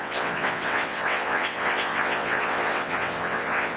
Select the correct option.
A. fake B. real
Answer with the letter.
A